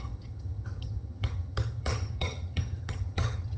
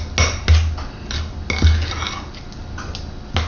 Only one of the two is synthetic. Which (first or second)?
first